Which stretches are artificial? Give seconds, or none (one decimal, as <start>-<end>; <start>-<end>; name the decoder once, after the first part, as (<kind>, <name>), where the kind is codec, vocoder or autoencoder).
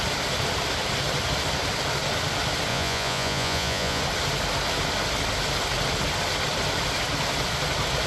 2.7-4.0 (vocoder, Vocos)